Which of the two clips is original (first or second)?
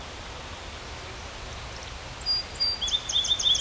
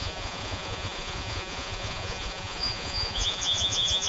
first